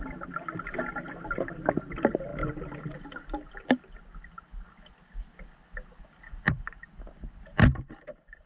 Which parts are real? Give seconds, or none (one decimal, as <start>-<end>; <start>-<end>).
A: 0.0-8.5